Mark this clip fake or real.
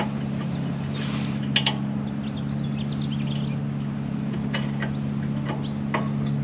real